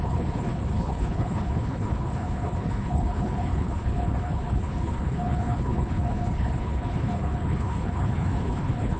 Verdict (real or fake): fake